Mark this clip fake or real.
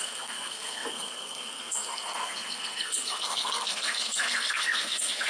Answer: fake